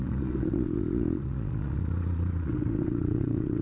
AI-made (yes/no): yes